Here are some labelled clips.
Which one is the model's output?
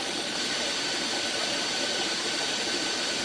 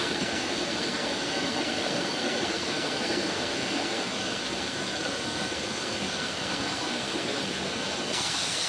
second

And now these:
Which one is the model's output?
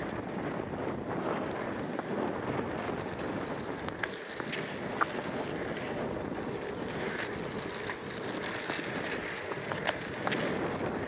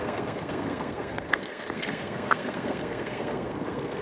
second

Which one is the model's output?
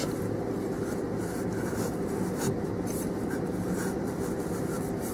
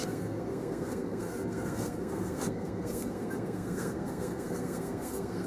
second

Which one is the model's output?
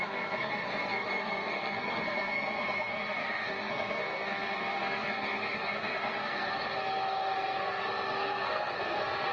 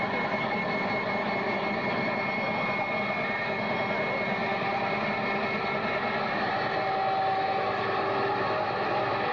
first